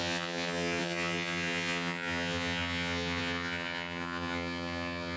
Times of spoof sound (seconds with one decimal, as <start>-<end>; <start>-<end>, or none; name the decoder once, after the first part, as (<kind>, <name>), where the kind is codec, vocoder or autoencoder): 0.0-5.2 (vocoder, HiFi-GAN)